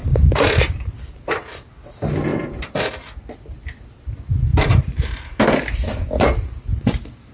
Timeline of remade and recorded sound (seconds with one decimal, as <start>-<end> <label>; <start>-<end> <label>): 0.0-1.5 remade; 1.5-2.3 recorded; 2.3-2.9 remade; 2.9-4.5 recorded; 4.5-5.4 remade; 5.4-7.3 recorded